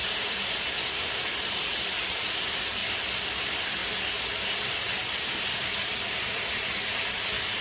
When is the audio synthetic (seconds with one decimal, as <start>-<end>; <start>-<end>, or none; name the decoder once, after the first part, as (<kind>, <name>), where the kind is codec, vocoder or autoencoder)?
0.0-2.8 (vocoder, BigVGAN v2); 3.4-3.8; 5.4-7.6